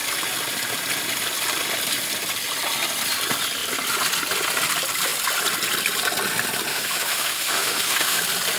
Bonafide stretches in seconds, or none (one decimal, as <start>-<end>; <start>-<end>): 0.0-6.7; 8.2-8.6